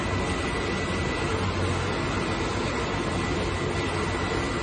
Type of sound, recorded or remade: recorded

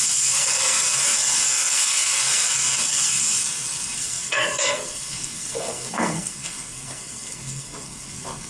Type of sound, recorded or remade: remade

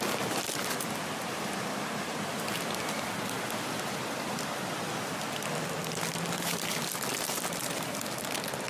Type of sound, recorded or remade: recorded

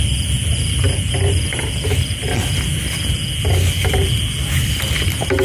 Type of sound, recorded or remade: recorded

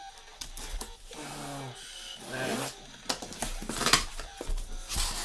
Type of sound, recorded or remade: recorded